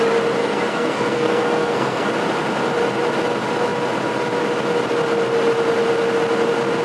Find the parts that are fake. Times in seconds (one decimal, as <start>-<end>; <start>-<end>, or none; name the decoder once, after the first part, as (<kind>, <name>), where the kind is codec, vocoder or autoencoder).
0.4-2.1 (codec, SNAC)